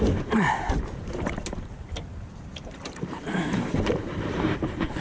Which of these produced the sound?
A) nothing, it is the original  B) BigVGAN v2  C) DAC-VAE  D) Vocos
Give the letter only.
B